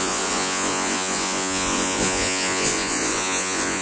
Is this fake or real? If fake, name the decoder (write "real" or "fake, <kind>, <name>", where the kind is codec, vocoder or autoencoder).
fake, vocoder, Vocos